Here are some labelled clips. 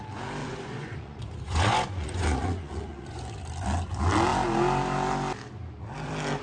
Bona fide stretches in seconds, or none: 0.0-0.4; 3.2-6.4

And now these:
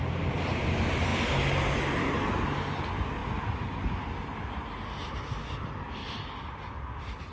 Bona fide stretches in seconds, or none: 0.0-7.3

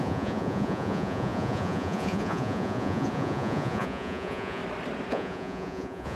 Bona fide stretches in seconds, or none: 4.6-5.1

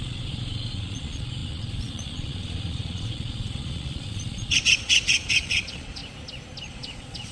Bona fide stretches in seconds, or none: 6.0-6.7

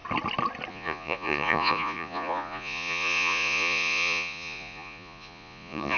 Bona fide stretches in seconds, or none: 0.0-0.7

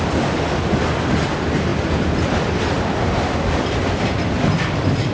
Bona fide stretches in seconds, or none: 0.0-5.1

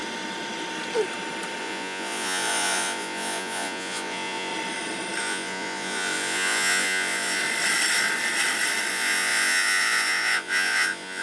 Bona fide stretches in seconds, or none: 0.0-1.6; 4.5-5.2; 7.4-8.9

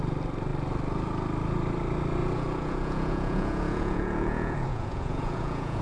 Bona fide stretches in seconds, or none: 0.0-2.2